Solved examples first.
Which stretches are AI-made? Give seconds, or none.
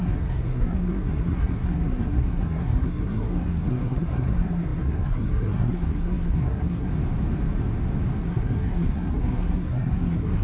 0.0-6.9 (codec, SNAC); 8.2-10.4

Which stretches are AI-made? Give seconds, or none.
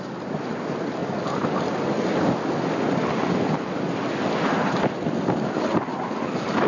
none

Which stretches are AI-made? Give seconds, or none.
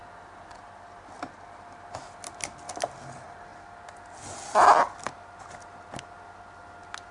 none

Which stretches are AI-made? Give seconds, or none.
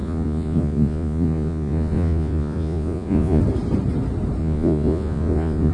0.0-3.4 (vocoder, Vocos); 4.4-5.7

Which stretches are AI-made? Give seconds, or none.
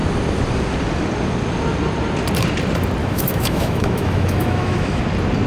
3.0-5.0 (autoencoder, DAC-VAE)